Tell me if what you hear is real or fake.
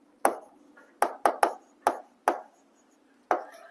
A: real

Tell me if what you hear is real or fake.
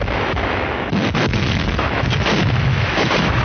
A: fake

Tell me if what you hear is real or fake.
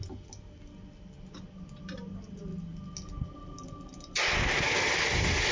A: real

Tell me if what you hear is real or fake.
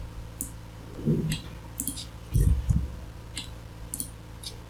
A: real